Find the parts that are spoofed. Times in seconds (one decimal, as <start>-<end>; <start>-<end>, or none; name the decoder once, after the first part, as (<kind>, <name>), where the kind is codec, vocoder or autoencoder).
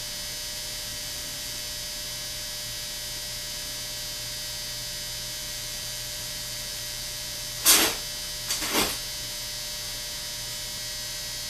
0.9-1.6 (vocoder, BigVGAN v2); 5.4-7.6